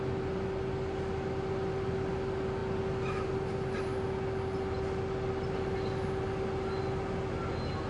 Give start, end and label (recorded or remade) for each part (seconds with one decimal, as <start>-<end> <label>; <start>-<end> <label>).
0.0-7.9 recorded